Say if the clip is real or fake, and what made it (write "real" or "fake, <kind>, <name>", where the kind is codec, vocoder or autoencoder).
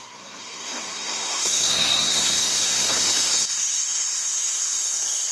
fake, codec, SNAC